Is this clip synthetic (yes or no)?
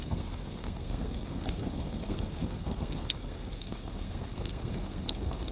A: yes